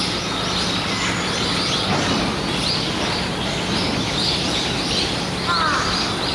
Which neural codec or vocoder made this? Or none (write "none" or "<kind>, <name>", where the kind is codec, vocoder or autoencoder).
none